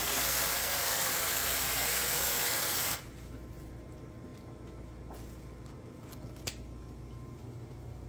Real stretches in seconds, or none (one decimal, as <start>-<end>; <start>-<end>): 3.0-8.1